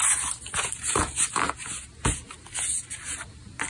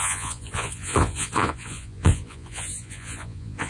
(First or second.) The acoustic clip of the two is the first